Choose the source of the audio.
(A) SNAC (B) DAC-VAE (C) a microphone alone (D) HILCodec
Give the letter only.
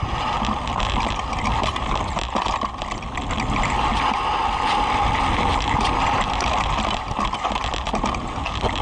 C